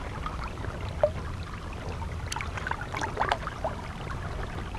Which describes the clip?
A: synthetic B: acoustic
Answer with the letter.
B